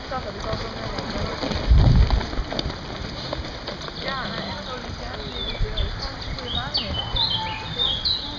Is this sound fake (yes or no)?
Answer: no